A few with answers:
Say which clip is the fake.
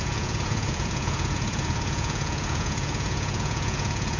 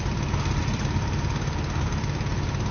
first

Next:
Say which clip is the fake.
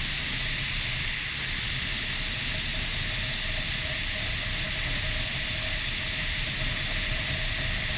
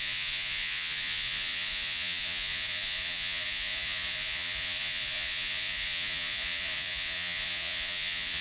second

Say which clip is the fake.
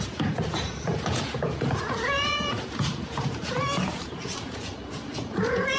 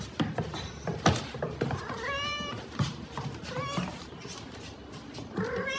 first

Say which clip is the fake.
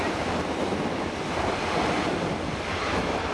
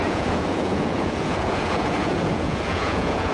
second